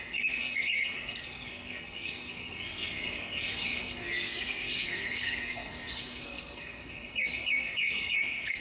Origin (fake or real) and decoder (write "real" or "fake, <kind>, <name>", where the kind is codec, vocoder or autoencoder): fake, codec, SNAC